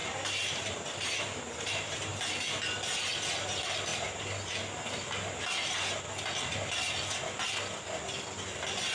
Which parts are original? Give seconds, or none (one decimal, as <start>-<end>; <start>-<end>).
2.2-3.9; 4.5-8.9